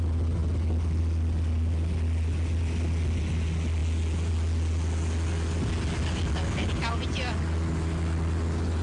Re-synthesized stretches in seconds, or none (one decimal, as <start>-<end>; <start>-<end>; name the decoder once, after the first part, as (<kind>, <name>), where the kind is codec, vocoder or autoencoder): none